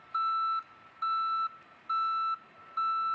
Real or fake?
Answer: real